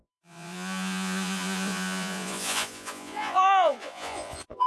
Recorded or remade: remade